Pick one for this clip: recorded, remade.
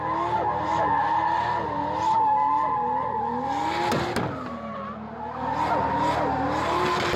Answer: recorded